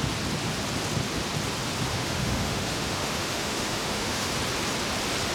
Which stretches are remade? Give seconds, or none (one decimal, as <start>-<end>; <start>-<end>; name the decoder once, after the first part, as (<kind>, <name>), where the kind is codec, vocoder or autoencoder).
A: 1.9-4.3 (autoencoder, DAC-VAE)